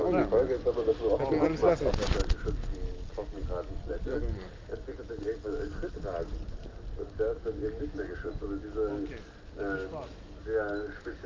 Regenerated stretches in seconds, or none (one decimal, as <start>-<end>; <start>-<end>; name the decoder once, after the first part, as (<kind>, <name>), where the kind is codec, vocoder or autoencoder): none